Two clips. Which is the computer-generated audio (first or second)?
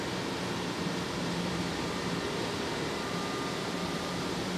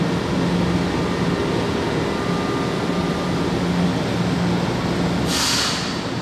first